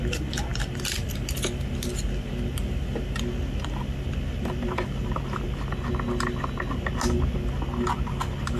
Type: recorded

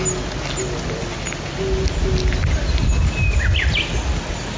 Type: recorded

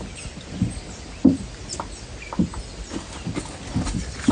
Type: recorded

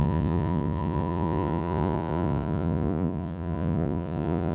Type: remade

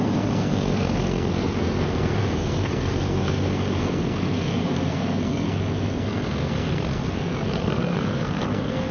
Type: remade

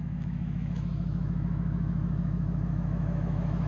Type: remade